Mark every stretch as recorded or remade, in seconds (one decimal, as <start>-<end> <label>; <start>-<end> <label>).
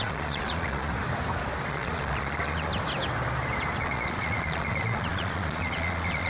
0.0-0.9 remade; 0.9-1.7 recorded; 1.7-2.7 remade; 2.7-3.8 recorded; 3.8-6.3 remade